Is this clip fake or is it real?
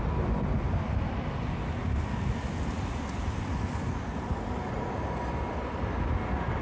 real